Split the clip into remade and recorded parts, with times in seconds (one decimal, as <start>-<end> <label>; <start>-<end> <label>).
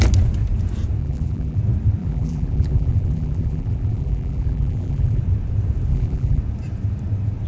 0.0-1.0 recorded; 1.0-1.6 remade; 1.6-2.0 recorded; 2.0-5.2 remade; 5.2-5.9 recorded; 5.9-6.4 remade; 6.4-7.5 recorded